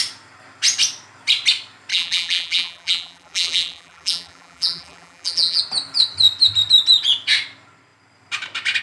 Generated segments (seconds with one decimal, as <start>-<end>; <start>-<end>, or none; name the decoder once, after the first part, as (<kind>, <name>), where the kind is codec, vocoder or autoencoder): 1.9-5.6 (vocoder, BigVGAN v2)